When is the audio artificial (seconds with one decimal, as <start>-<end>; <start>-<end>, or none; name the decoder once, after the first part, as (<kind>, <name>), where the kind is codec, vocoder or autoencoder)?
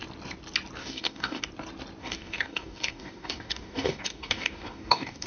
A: 0.8-1.4 (codec, DAC); 2.0-5.3